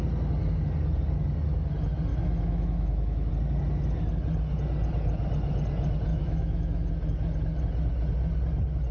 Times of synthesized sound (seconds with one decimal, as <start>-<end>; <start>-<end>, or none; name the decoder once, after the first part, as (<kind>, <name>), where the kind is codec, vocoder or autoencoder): 2.1-3.3 (autoencoder, DAC-VAE); 6.1-6.9